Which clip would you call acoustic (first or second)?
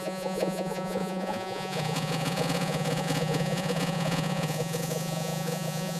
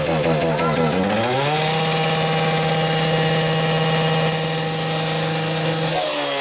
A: second